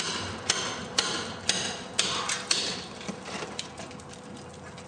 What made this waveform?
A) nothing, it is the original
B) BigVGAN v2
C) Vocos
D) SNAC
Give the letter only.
A